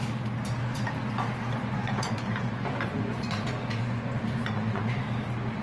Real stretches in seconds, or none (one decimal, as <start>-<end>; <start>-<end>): 0.0-1.6; 5.0-5.6